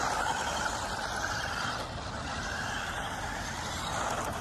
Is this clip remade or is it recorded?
recorded